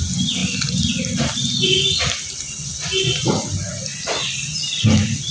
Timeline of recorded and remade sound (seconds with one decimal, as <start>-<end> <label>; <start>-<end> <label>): 0.0-5.3 recorded